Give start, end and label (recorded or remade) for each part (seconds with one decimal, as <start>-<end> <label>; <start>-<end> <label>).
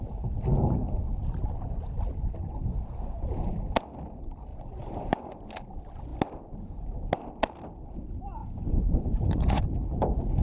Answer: 0.0-4.5 recorded; 4.5-5.5 remade; 5.5-8.4 recorded; 8.4-9.7 remade; 9.7-10.4 recorded